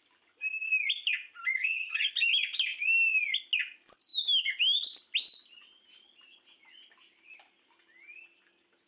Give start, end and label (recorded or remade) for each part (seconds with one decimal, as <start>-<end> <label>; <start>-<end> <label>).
0.0-1.6 recorded; 1.6-2.1 remade; 2.1-8.9 recorded